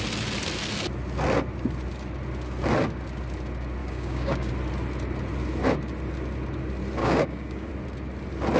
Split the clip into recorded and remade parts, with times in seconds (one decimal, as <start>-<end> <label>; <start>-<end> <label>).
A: 0.0-3.8 recorded; 3.8-4.5 remade; 4.5-7.0 recorded; 7.0-7.7 remade; 7.7-8.6 recorded